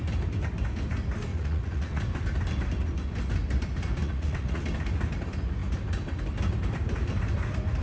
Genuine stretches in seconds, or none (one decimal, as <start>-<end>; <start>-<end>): 0.0-1.3; 2.0-4.0; 4.6-7.8